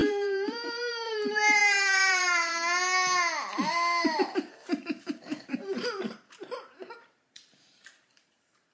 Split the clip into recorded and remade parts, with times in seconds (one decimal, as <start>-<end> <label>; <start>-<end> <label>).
0.0-2.5 remade; 2.5-3.7 recorded; 3.7-8.7 remade